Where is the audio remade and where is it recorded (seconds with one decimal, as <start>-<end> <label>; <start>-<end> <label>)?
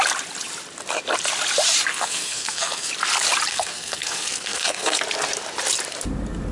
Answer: 0.0-1.9 recorded; 1.9-2.9 remade; 2.9-3.5 recorded; 3.5-5.0 remade; 5.0-6.5 recorded